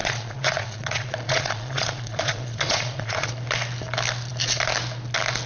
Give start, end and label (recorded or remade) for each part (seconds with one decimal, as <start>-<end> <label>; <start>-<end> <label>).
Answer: 0.0-3.3 remade; 3.3-5.5 recorded